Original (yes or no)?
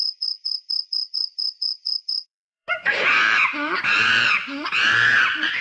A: no